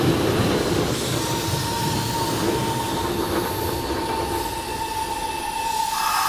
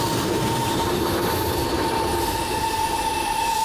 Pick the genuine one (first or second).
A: first